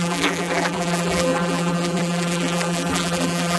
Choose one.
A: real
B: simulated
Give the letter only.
B